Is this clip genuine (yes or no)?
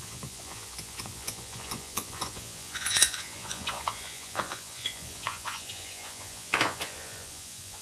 no